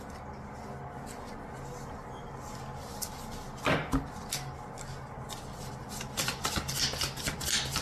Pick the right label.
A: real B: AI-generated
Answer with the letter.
A